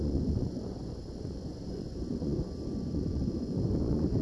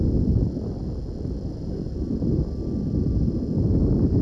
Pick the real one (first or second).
second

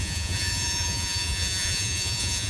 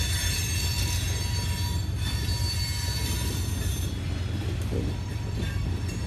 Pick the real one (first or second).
second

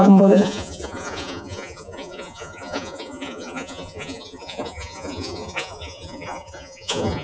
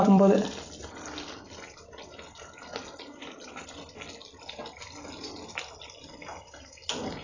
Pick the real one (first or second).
second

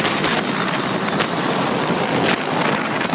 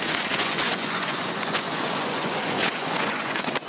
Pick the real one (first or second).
first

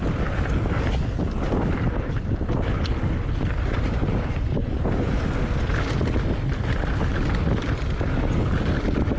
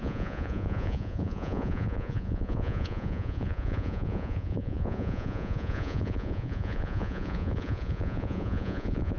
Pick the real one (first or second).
first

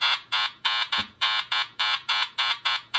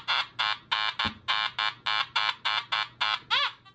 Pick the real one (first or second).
second